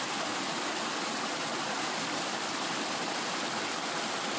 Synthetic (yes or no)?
no